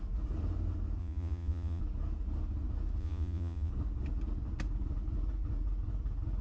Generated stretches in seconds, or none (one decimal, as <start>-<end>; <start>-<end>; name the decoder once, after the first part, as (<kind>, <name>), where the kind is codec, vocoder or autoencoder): 1.0-1.8 (vocoder, Vocos); 3.0-3.7